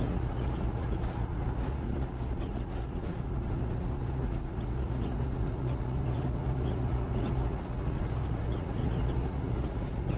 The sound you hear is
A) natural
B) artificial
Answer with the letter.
B